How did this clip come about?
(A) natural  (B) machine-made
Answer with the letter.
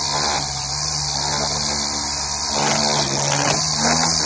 A